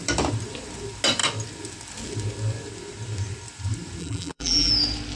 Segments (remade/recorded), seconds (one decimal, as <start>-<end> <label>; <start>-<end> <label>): 0.0-4.0 recorded; 4.0-4.7 remade; 4.7-5.2 recorded